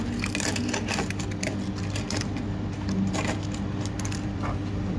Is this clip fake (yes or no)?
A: no